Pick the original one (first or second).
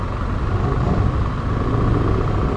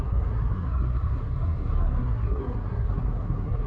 first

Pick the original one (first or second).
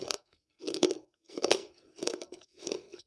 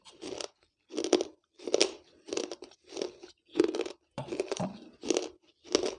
second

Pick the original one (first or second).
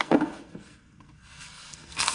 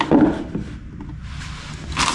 second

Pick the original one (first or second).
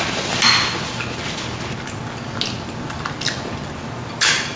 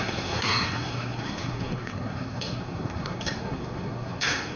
first